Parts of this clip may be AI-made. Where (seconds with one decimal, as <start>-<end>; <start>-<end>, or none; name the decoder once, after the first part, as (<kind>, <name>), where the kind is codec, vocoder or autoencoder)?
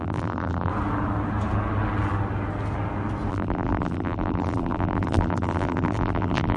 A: 0.0-0.7 (vocoder, BigVGAN v2); 3.3-6.6